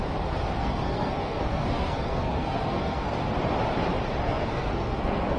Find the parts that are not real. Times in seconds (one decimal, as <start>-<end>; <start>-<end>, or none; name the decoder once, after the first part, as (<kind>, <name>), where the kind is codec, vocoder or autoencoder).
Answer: 0.5-3.2 (codec, SNAC); 4.2-5.4